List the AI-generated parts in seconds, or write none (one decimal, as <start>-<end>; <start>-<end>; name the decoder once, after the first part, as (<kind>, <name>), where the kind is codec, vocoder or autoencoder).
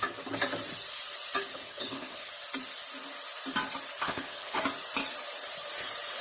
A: 1.5-2.3 (codec, HILCodec); 4.0-4.6